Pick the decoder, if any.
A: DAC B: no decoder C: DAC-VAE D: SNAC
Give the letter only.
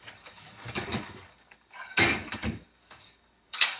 A